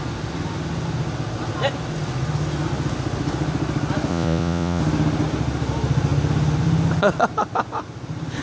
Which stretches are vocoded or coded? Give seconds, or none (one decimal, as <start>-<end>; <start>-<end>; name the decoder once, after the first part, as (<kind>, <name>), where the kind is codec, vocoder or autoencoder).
4.1-4.8 (vocoder, Vocos)